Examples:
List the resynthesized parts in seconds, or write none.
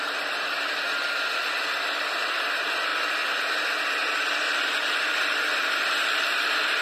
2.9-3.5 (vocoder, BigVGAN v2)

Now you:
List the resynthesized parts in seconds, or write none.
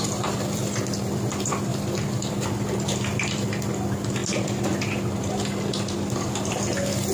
1.7-2.3 (vocoder, BigVGAN v2)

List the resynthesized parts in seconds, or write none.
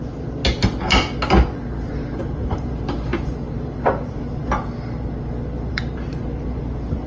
0.0-0.4 (vocoder, BigVGAN v2); 1.8-4.4; 5.7-7.1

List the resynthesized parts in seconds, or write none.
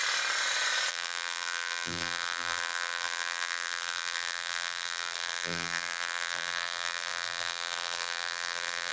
0.9-8.9 (vocoder, BigVGAN v2)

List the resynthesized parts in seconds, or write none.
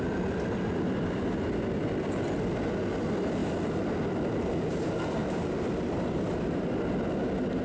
1.0-2.0 (vocoder, BigVGAN v2); 3.4-4.1; 5.2-6.3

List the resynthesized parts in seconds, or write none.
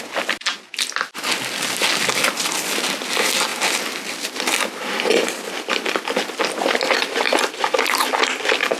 none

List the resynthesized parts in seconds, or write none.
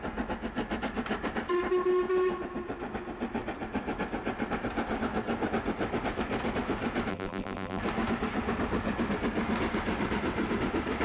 7.1-7.8 (vocoder, BigVGAN v2)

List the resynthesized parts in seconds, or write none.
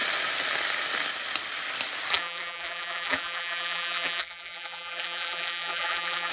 2.1-6.3 (vocoder, BigVGAN v2)